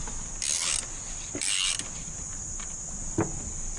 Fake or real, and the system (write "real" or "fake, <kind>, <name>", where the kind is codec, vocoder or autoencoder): real